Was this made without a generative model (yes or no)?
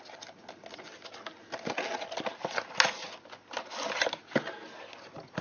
yes